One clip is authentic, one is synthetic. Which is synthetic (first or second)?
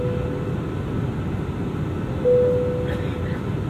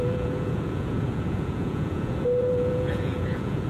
second